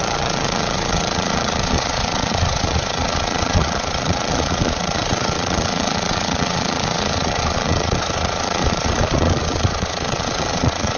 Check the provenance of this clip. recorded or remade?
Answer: remade